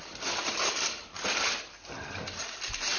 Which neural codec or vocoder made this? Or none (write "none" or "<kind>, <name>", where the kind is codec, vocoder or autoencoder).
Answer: none